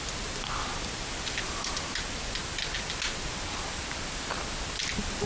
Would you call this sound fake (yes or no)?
no